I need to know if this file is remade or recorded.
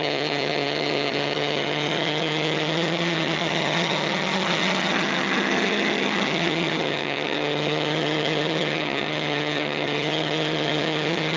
remade